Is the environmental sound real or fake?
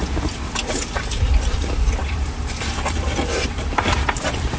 fake